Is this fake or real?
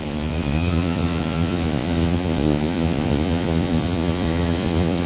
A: fake